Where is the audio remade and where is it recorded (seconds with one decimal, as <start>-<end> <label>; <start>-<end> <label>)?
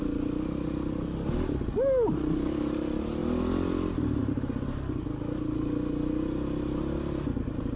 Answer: 0.0-7.8 recorded